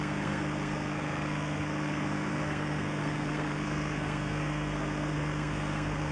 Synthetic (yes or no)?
yes